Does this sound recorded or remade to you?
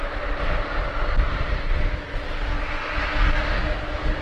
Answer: recorded